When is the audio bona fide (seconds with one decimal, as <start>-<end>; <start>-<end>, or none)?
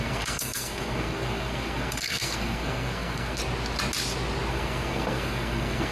3.4-4.5